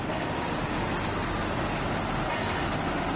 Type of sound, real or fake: real